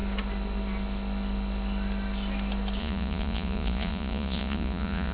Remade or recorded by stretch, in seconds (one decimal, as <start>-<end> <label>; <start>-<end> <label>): 0.0-2.8 recorded; 2.8-5.1 remade